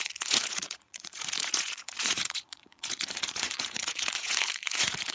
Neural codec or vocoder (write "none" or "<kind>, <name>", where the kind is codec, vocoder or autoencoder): vocoder, Vocos